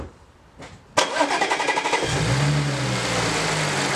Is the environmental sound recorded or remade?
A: recorded